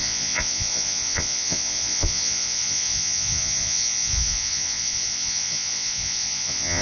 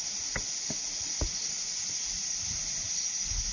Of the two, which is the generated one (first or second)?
first